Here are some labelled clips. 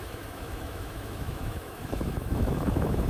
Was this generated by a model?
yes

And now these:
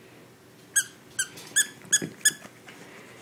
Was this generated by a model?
no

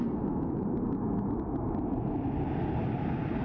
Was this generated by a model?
no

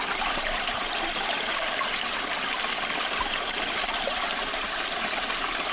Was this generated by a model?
no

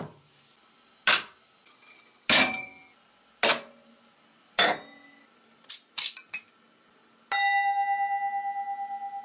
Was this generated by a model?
no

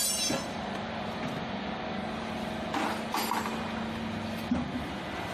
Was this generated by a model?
no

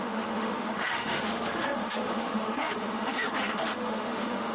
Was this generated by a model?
yes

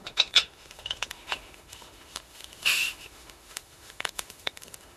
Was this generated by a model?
yes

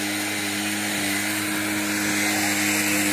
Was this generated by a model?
no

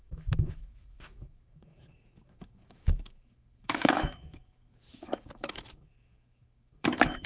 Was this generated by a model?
yes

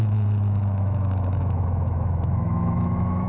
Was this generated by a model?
yes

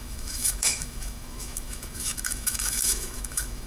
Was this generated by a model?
yes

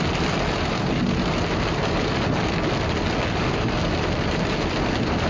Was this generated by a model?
no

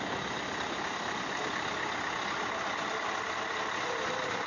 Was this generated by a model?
no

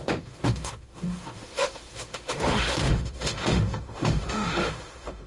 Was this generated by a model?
yes